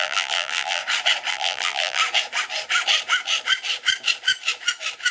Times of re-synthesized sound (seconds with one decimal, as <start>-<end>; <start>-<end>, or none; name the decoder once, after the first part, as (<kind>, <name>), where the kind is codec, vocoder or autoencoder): 0.0-0.8 (vocoder, BigVGAN v2); 1.3-2.0